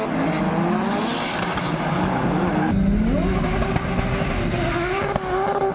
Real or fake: real